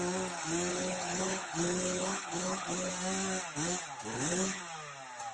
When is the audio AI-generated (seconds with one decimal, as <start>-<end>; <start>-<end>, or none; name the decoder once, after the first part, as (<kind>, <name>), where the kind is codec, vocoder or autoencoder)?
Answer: 0.7-2.9 (codec, HILCodec); 4.1-4.6